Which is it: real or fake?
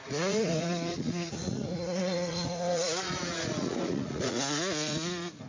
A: fake